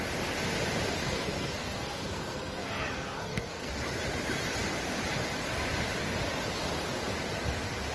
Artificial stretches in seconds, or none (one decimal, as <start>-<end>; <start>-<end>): 1.0-3.7

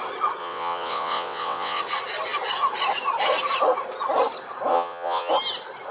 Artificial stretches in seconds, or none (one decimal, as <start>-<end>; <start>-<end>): 0.4-1.8; 4.7-5.3

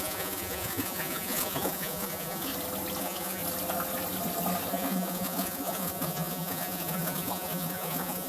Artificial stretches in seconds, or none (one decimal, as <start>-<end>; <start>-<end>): 0.0-2.5; 3.0-3.4; 4.7-8.3

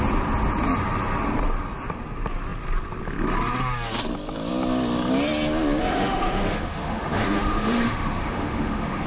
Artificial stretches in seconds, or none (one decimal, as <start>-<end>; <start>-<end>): 5.8-9.1

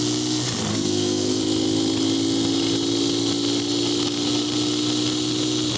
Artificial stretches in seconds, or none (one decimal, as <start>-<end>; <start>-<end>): 0.7-1.4

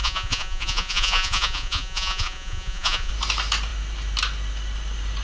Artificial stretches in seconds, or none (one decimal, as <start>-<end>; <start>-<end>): 0.0-3.1

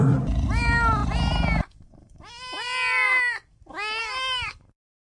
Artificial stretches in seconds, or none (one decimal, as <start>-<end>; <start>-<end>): none